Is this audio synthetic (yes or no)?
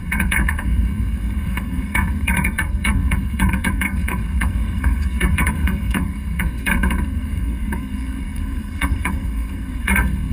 yes